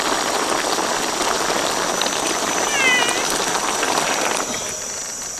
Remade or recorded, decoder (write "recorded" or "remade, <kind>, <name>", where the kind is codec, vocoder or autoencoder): recorded